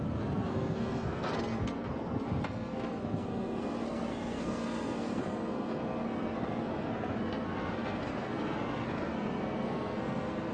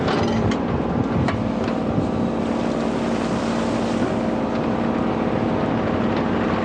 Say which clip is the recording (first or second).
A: second